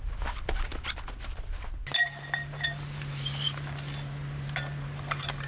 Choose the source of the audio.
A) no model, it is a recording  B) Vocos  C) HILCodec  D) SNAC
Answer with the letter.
A